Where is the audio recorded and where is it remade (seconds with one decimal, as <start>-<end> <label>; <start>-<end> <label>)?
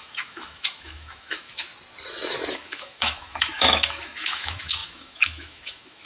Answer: 0.0-1.7 remade; 1.7-2.5 recorded; 2.5-6.1 remade